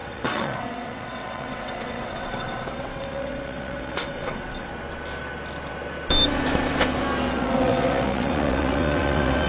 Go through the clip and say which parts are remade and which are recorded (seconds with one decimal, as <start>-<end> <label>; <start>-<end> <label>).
0.0-4.7 remade; 4.7-7.3 recorded; 7.3-9.5 remade